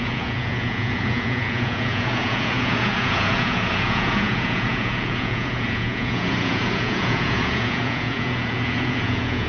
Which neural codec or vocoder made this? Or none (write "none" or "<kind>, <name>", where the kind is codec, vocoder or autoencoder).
vocoder, Vocos